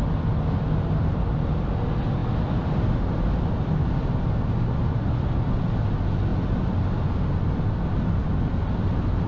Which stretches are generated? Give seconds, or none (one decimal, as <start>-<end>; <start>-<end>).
none

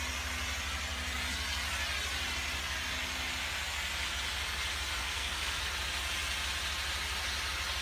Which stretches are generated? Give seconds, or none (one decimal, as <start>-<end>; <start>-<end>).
5.0-5.6

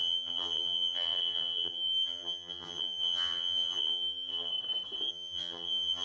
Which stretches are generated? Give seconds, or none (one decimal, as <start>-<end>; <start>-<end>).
0.0-4.5; 5.1-6.0

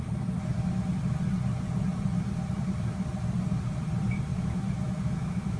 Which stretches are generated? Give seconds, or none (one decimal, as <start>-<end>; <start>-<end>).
4.3-5.6

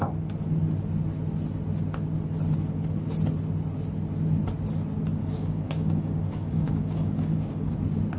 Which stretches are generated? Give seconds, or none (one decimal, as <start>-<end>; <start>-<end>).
5.2-7.7